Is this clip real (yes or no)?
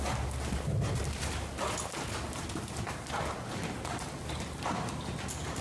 yes